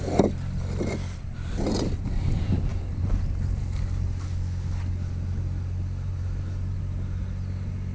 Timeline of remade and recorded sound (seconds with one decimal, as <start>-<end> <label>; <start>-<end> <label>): 0.0-7.9 recorded